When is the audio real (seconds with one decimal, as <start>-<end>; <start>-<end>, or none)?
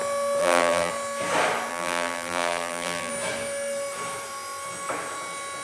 0.0-0.4; 0.9-1.7; 3.1-5.6